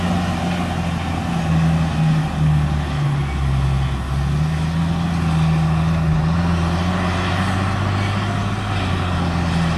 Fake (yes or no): no